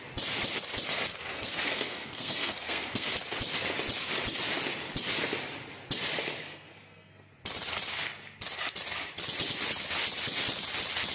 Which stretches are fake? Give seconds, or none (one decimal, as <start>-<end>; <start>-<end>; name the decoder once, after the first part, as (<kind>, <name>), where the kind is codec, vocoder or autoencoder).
1.1-3.1 (codec, SNAC); 6.4-7.1